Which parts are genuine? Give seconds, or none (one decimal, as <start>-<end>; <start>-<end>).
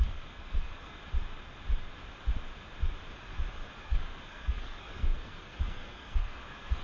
1.0-3.8